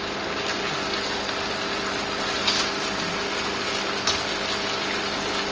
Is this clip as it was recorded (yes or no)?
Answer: yes